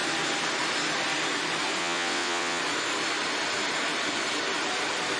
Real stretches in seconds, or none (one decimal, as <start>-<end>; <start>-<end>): 0.0-1.8; 2.6-5.2